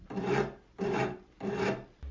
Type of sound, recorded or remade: recorded